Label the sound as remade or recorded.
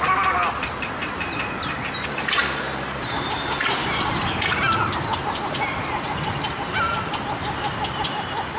recorded